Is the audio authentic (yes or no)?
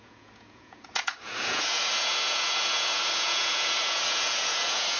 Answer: no